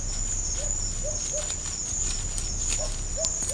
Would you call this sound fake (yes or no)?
no